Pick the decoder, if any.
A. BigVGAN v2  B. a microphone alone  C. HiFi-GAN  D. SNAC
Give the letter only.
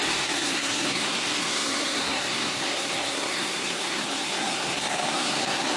D